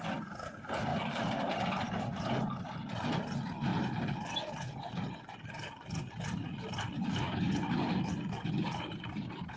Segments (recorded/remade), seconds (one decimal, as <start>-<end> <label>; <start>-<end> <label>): 0.0-9.6 recorded